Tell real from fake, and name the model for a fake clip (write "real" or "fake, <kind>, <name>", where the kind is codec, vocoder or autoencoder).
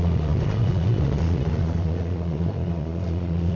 fake, vocoder, Vocos